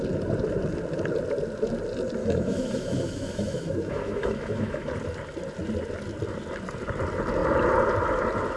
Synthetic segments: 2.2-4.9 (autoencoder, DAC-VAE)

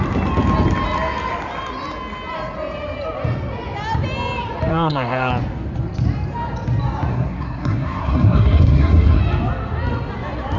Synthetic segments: 4.7-5.3 (codec, SNAC); 7.1-9.2

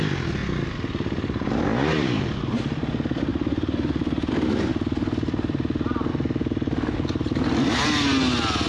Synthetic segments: 0.4-2.2 (vocoder, BigVGAN v2); 3.3-4.3

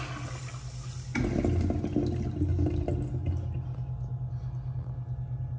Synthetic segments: none

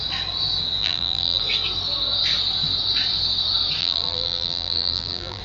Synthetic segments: 0.8-1.4 (vocoder, BigVGAN v2); 3.8-5.4